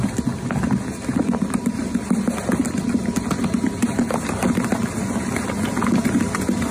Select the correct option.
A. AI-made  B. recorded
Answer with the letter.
B